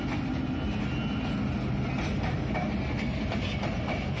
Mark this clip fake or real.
real